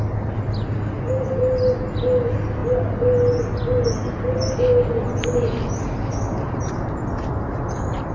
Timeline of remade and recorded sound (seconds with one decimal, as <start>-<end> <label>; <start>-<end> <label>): 0.0-8.1 recorded